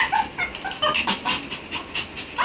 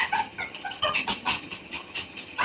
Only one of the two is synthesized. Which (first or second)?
second